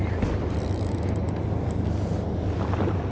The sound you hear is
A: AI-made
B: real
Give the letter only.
B